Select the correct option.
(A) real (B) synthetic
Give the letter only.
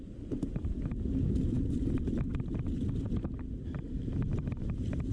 A